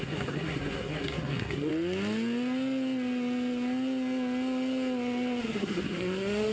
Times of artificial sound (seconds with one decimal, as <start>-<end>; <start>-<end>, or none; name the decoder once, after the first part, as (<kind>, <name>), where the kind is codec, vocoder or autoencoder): 0.0-1.7 (codec, SNAC); 5.4-6.5